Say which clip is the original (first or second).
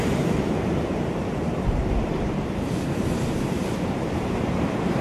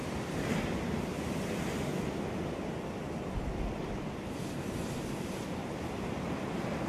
second